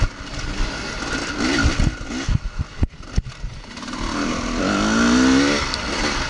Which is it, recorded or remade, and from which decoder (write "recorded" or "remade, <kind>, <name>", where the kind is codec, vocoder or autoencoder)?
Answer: recorded